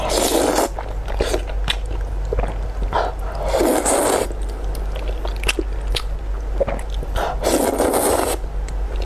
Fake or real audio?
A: real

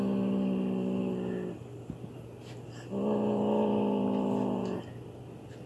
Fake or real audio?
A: real